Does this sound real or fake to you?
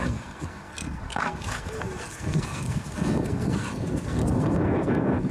fake